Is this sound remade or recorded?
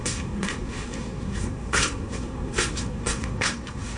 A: remade